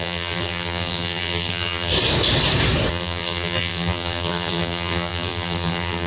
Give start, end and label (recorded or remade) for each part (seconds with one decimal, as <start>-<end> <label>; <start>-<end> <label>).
0.0-1.9 remade; 1.9-2.9 recorded; 2.9-6.1 remade